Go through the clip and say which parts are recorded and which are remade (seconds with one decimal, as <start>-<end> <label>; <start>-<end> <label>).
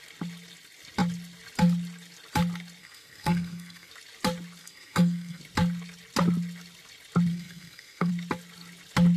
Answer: 0.0-2.8 recorded; 2.8-3.9 remade; 3.9-4.6 recorded; 4.6-5.4 remade; 5.4-7.3 recorded; 7.3-8.1 remade; 8.1-9.2 recorded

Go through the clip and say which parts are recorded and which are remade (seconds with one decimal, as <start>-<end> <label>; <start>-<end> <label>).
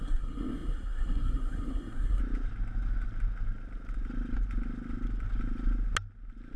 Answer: 0.0-2.2 remade; 2.2-6.6 recorded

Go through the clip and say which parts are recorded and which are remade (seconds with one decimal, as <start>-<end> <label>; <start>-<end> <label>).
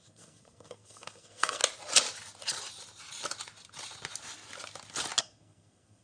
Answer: 0.0-1.6 remade; 1.6-5.2 recorded; 5.2-6.0 remade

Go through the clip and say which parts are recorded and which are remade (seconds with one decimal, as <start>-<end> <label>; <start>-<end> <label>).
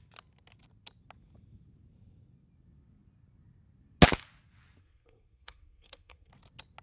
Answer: 0.0-4.8 recorded; 4.8-6.3 remade; 6.3-6.8 recorded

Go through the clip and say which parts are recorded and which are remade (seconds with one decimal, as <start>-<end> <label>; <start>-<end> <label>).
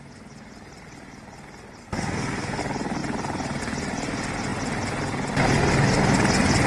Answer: 0.0-1.8 recorded; 1.8-2.6 remade; 2.6-6.7 recorded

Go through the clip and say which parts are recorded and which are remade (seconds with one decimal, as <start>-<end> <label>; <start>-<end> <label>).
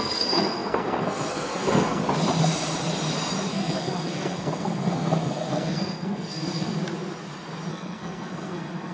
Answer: 0.0-2.0 remade; 2.0-3.5 recorded; 3.5-6.7 remade; 6.7-7.7 recorded; 7.7-8.9 remade